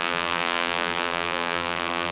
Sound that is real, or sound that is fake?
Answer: fake